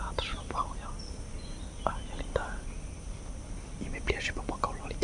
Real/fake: fake